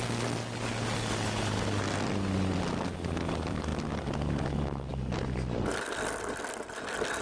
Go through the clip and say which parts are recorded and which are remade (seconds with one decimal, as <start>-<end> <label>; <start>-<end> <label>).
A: 0.0-7.2 recorded